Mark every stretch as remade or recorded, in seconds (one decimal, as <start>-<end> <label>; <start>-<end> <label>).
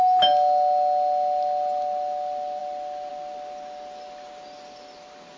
0.0-5.4 recorded